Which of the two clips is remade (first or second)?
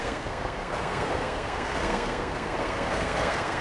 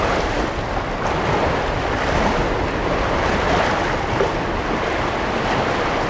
first